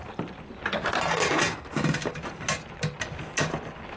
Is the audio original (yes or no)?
yes